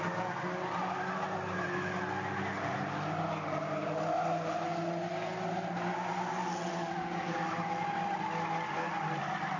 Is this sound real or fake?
real